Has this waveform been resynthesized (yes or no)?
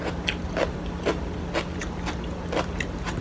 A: no